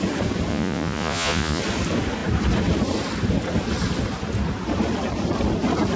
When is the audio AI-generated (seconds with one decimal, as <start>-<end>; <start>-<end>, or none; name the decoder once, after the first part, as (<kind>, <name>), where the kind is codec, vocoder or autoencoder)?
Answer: 0.5-1.6 (vocoder, Vocos)